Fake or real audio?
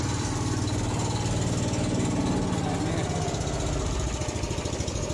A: real